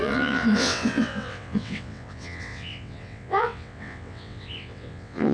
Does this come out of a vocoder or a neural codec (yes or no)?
yes